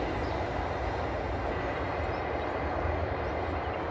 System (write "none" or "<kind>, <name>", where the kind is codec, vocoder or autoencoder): none